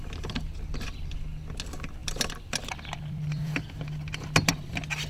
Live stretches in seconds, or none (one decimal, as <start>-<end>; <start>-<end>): 0.0-2.0; 3.7-5.1